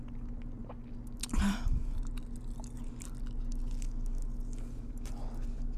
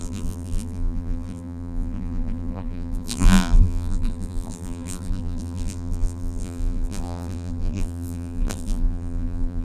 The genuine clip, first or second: first